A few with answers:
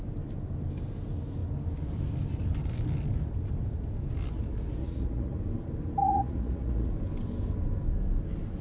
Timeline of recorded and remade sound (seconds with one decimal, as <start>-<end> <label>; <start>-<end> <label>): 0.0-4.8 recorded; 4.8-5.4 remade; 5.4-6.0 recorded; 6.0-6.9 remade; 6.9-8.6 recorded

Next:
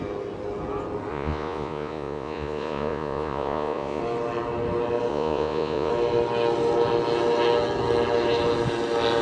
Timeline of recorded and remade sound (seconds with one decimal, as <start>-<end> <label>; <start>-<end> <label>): 0.0-1.1 recorded; 1.1-4.0 remade; 4.0-5.1 recorded; 5.1-5.9 remade; 5.9-9.2 recorded

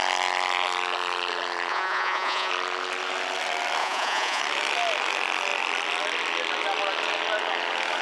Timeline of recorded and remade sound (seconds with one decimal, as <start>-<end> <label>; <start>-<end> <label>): 0.0-1.7 recorded; 1.7-2.5 remade; 2.5-3.8 recorded; 3.8-4.4 remade; 4.4-8.0 recorded

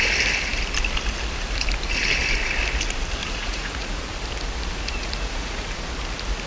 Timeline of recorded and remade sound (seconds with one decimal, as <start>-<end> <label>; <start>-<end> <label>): 0.0-3.2 recorded; 3.2-4.0 remade; 4.0-5.0 recorded; 5.0-5.7 remade; 5.7-6.5 recorded

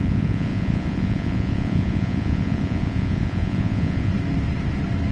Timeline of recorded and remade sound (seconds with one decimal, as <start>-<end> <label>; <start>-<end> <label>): 0.0-4.1 remade; 4.1-5.1 recorded